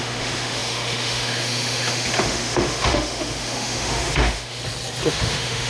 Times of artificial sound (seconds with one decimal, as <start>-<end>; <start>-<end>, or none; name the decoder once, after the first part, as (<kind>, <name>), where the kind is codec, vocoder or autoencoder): 0.0-4.6 (autoencoder, DAC-VAE); 5.1-5.7